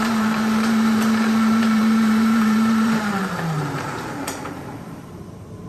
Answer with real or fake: fake